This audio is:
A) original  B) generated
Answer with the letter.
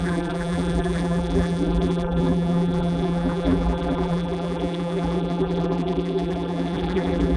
B